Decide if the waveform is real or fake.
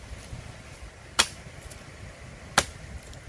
real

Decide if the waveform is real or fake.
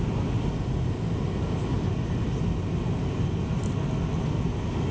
real